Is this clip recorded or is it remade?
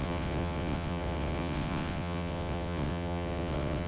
remade